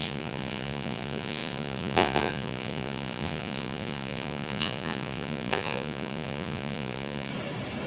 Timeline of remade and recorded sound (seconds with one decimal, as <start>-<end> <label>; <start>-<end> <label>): 0.0-7.3 remade; 7.3-7.9 recorded